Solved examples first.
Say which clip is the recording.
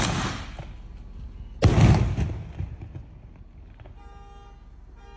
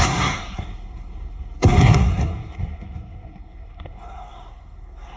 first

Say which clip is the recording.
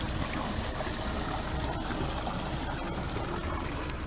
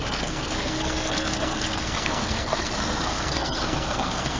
first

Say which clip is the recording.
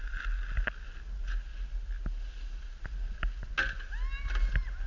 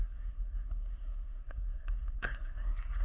first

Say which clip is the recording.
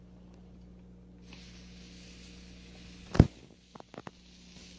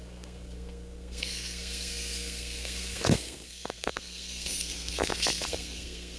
first